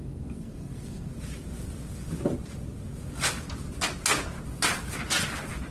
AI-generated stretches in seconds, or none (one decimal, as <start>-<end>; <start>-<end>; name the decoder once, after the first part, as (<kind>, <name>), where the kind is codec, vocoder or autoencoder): 0.0-1.1 (codec, SNAC)